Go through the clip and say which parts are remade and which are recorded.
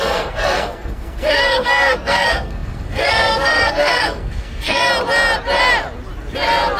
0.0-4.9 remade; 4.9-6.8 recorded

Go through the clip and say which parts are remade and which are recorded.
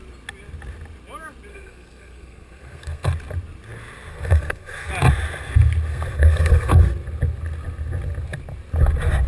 0.0-1.5 recorded; 1.5-3.1 remade; 3.1-4.1 recorded; 4.1-4.9 remade; 4.9-5.9 recorded; 5.9-6.8 remade; 6.8-9.3 recorded